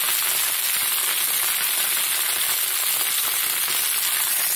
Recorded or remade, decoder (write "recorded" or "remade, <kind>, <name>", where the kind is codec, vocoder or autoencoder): recorded